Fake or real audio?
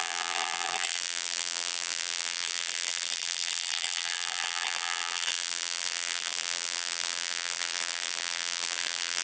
fake